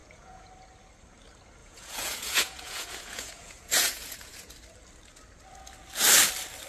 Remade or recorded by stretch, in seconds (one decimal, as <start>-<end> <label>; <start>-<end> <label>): 0.0-0.5 remade; 0.5-1.6 recorded; 1.6-4.5 remade; 4.5-6.7 recorded